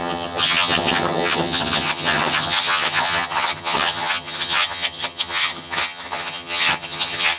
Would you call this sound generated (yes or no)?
yes